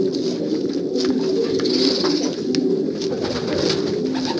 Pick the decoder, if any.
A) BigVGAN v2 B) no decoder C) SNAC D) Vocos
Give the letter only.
B